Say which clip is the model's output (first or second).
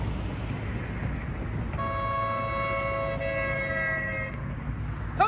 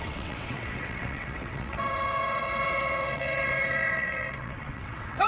second